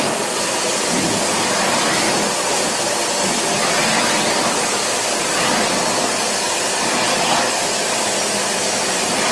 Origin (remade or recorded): recorded